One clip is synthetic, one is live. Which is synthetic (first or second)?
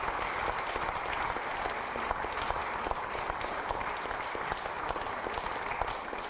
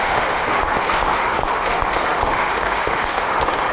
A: second